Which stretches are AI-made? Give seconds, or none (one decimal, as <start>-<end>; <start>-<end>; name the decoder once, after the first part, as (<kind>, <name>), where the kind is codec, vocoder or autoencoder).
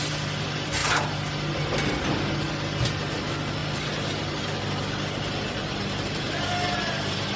none